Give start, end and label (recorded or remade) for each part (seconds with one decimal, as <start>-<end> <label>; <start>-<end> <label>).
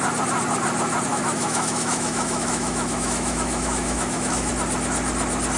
0.0-1.1 recorded; 1.1-4.5 remade; 4.5-5.6 recorded